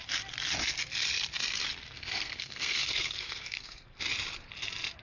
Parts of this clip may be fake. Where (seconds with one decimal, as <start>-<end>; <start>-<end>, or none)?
1.7-4.0

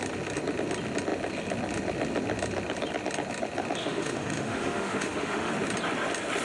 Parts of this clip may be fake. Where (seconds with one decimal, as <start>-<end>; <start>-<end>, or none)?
3.8-5.5

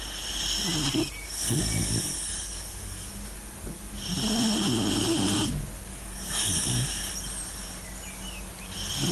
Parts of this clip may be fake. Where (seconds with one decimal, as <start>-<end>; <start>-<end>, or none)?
1.8-3.1; 5.9-7.0